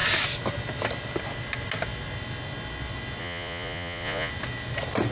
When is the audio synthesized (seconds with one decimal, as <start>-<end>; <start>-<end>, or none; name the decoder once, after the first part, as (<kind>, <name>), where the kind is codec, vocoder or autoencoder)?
3.2-4.3 (vocoder, Vocos)